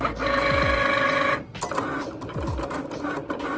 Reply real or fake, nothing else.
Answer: real